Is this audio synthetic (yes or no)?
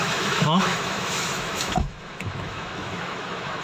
yes